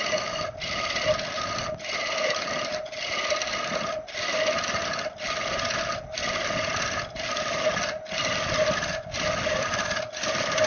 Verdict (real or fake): real